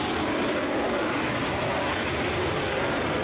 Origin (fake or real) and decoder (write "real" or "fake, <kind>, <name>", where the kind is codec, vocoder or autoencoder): real